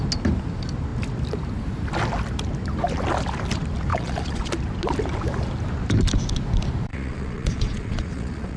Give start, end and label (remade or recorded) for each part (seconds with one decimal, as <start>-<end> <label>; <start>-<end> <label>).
0.0-3.9 recorded; 3.9-4.5 remade; 4.5-6.9 recorded; 6.9-8.6 remade